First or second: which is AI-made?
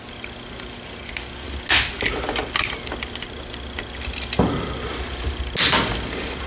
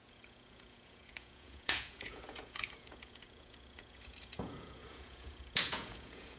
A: second